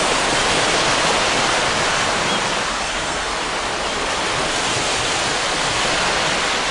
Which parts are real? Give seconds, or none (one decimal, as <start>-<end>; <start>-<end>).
0.0-2.8; 3.3-6.7